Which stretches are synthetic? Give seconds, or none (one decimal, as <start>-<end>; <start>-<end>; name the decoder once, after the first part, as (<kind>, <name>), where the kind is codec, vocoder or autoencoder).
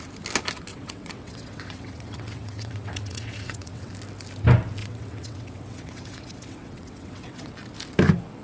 0.7-3.9 (vocoder, WaveNeXt); 4.8-7.5